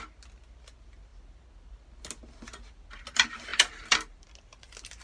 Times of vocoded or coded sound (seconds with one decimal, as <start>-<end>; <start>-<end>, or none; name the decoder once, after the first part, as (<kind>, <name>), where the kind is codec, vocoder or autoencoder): 3.5-4.2 (vocoder, BigVGAN v2)